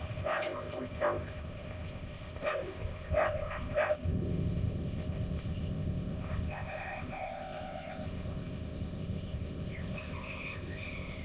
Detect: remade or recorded remade